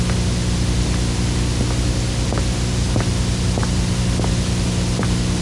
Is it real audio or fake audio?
real